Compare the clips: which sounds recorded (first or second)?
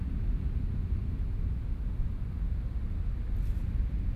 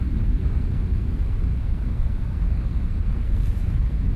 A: first